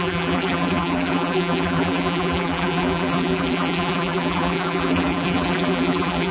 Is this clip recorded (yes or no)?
no